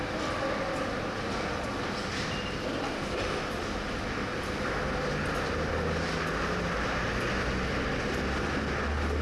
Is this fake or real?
real